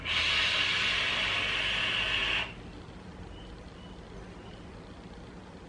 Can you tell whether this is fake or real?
real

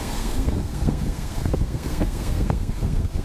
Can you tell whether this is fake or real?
fake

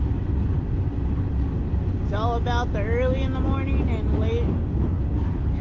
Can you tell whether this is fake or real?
real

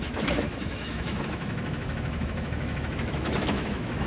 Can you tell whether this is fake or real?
fake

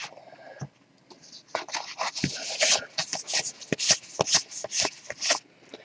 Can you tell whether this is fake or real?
real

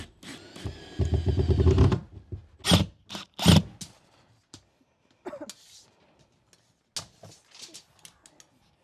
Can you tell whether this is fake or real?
real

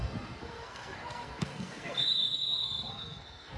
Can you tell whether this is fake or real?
fake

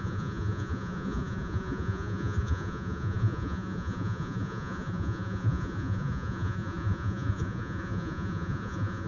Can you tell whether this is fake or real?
fake